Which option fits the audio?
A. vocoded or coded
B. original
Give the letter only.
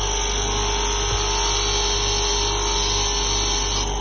B